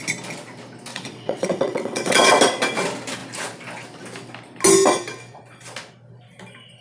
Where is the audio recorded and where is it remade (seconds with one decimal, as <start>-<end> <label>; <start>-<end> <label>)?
0.0-0.9 recorded; 0.9-2.4 remade; 2.4-6.8 recorded